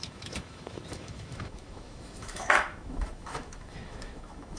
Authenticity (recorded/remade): remade